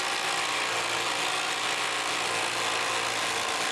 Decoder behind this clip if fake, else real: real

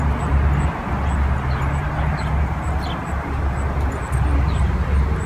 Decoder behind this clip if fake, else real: real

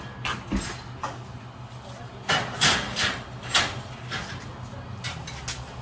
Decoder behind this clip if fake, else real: real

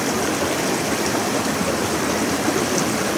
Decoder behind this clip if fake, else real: real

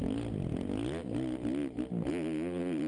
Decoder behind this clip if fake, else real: real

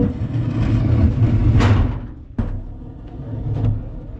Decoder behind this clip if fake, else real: real